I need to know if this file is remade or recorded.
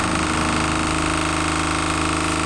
recorded